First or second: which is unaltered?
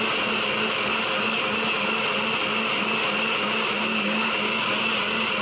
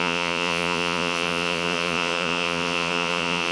first